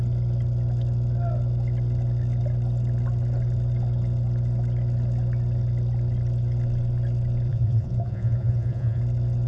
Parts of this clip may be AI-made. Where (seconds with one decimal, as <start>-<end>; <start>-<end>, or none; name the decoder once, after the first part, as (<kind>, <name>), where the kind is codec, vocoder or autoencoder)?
7.5-9.0 (vocoder, Vocos)